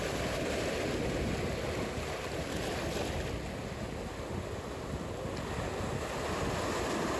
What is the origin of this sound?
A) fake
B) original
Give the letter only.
B